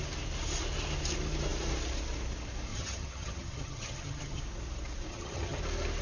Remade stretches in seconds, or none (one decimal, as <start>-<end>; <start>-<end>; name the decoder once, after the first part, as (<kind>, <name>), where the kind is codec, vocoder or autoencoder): 2.7-4.4 (vocoder, HiFi-GAN); 5.1-5.6